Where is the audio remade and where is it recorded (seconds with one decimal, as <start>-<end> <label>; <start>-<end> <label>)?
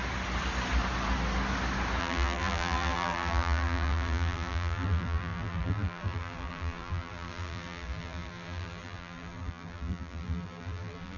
0.0-2.0 recorded; 2.0-11.2 remade